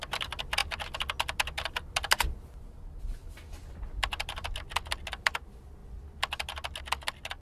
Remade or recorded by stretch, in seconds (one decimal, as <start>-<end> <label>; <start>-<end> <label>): 0.0-7.4 recorded